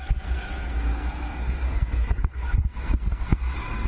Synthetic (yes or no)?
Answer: yes